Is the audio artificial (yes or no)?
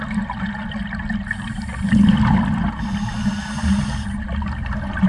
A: no